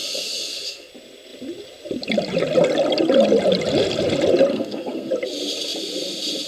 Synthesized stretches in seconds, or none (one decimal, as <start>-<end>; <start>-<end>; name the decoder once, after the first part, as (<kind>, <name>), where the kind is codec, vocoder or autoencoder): 0.0-0.9 (codec, SNAC); 4.5-5.1